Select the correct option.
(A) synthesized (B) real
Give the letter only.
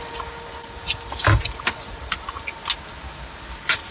B